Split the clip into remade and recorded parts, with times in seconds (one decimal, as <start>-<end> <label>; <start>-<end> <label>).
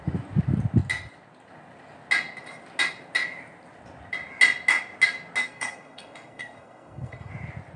0.0-5.4 recorded; 5.4-7.3 remade; 7.3-7.8 recorded